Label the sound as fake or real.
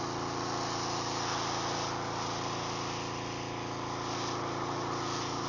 real